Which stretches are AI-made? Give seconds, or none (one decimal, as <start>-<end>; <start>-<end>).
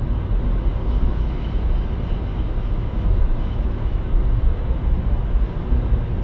0.7-1.7; 2.3-4.6